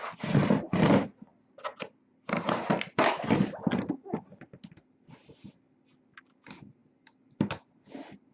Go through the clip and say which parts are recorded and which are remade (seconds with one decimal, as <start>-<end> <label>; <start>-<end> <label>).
0.0-1.3 recorded; 1.3-6.0 remade; 6.0-8.3 recorded